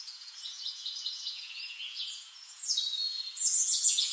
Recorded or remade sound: remade